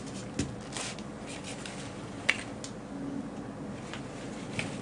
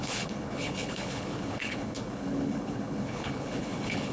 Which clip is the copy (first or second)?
second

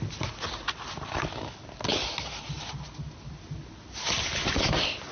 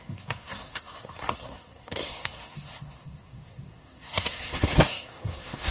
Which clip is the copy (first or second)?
second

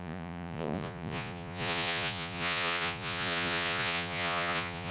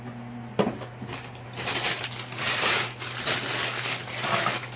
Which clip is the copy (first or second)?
first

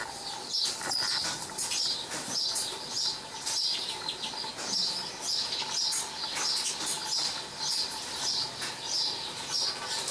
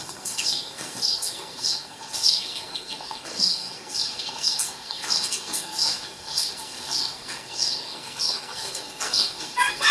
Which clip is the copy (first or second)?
second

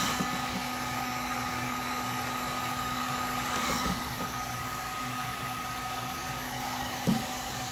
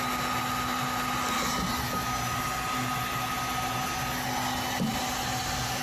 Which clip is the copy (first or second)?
first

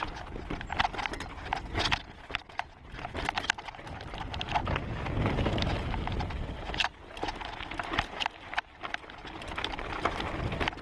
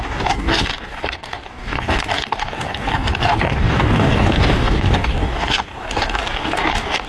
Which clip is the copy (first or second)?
second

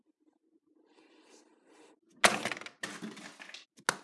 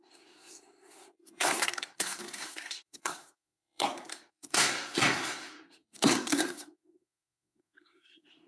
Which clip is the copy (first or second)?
second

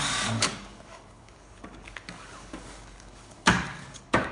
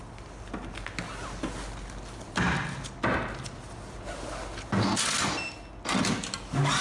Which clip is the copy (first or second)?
first